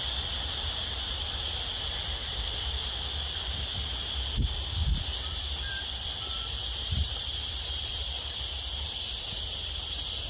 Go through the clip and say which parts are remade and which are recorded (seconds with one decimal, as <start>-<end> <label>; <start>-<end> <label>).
0.0-2.3 recorded; 2.3-3.8 remade; 3.8-4.8 recorded; 4.8-8.4 remade; 8.4-10.3 recorded

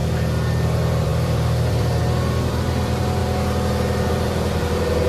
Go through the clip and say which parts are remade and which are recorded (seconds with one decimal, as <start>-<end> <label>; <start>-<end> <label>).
0.0-0.5 recorded; 0.5-3.2 remade; 3.2-4.1 recorded; 4.1-5.1 remade

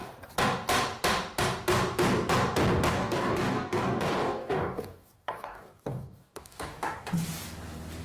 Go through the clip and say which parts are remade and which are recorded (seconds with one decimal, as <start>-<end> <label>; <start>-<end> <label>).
0.0-2.9 recorded; 2.9-7.1 remade; 7.1-8.0 recorded